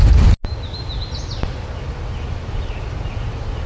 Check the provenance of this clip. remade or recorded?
recorded